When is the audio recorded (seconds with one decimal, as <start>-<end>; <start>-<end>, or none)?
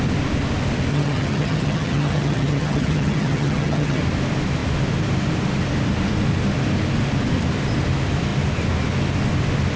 0.0-0.9; 4.0-9.8